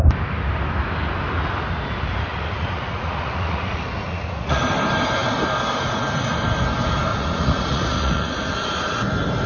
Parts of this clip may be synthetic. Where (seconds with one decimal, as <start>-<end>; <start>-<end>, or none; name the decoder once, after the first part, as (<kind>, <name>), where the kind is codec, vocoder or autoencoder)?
2.3-4.6 (vocoder, Vocos); 7.1-9.0